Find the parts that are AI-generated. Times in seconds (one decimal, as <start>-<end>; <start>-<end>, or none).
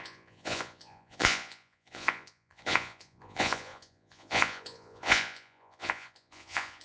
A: 0.0-6.8